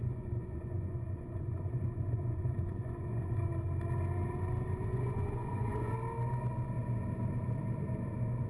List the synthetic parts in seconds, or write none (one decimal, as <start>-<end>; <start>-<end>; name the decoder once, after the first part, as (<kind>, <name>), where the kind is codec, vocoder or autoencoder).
0.0-3.5 (vocoder, Vocos); 4.9-5.9